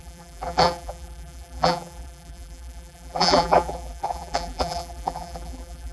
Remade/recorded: remade